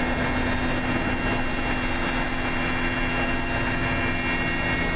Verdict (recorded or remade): recorded